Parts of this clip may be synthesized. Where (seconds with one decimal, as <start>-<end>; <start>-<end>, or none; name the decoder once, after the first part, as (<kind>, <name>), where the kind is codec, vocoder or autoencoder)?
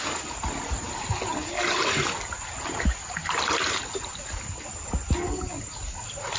none